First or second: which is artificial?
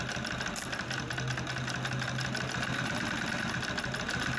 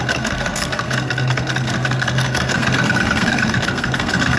second